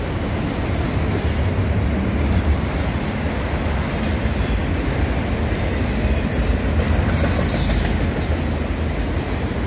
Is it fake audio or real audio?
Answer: real